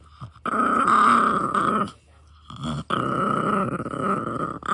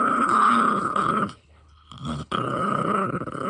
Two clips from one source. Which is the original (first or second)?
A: first